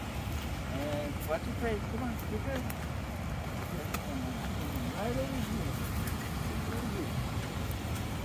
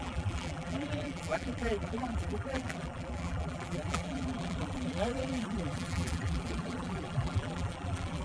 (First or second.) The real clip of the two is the first